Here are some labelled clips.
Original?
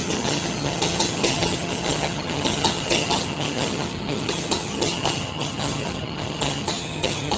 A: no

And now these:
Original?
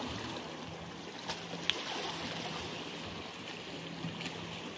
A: yes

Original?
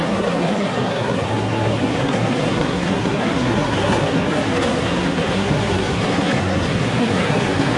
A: no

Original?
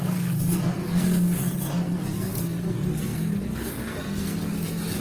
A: no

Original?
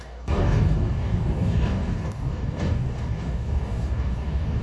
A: no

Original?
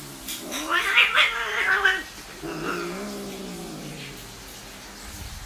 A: yes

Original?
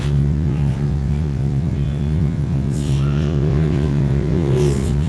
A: no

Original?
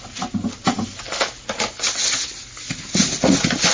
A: yes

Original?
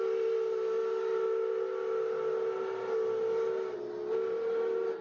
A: yes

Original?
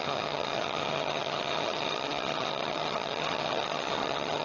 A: no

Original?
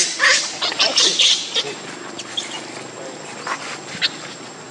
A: yes